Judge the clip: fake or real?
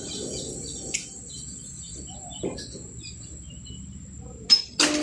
real